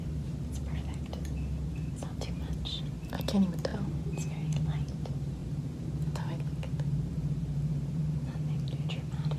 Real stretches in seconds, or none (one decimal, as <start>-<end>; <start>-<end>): 8.0-8.9

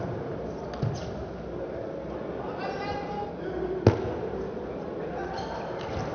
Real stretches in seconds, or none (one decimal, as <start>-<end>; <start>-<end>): 0.0-6.1

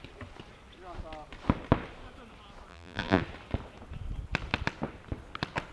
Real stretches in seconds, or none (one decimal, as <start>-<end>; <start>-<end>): 0.0-2.7; 3.2-5.7

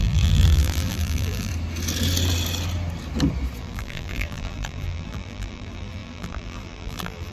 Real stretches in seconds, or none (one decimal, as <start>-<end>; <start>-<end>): 1.5-3.6

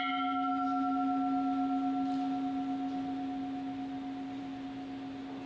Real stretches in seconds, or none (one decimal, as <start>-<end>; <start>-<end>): 0.0-5.5

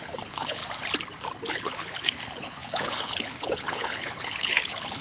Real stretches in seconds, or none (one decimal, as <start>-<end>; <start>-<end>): 0.6-1.5

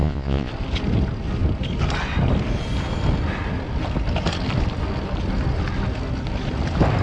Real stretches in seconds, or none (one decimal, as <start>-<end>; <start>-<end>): 0.5-7.0